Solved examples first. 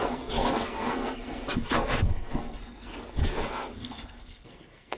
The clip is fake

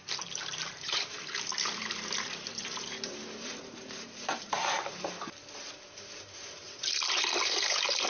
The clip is fake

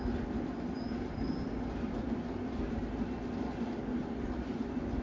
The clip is real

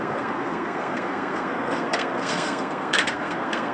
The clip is fake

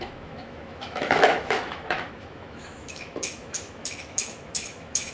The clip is fake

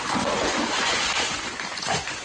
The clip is fake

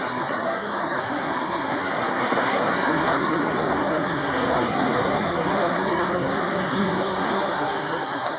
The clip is fake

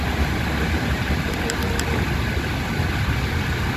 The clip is real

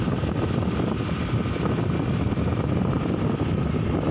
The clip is real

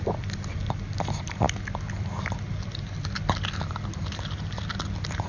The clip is real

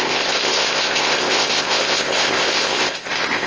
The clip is fake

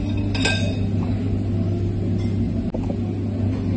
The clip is real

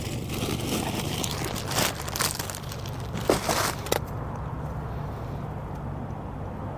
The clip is real